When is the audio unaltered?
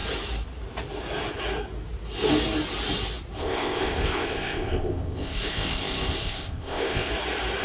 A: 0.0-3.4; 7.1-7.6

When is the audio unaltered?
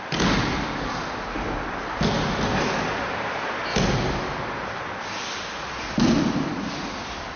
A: 0.0-7.4